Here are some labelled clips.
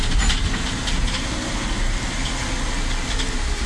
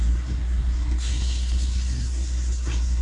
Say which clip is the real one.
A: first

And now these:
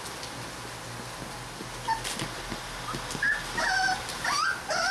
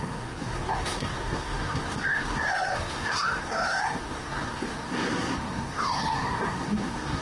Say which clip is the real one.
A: first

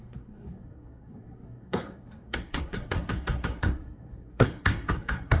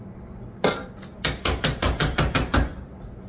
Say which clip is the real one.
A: second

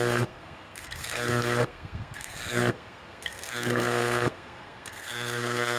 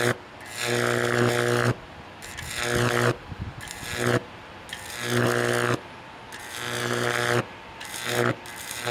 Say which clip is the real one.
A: second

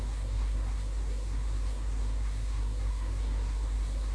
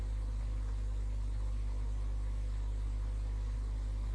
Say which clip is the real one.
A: second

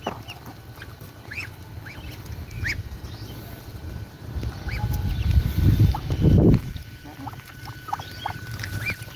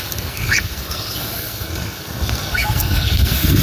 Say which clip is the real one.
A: first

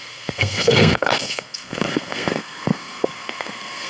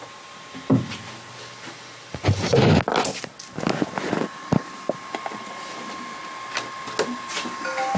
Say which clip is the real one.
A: second